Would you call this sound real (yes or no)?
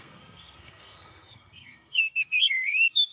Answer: no